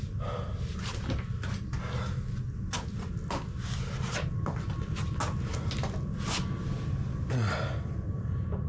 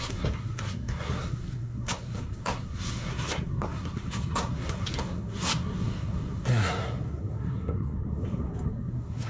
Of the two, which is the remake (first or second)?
second